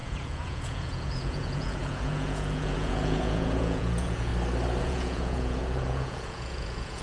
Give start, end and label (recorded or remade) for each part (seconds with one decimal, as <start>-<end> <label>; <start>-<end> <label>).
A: 0.0-4.3 remade; 4.3-4.8 recorded; 4.8-7.0 remade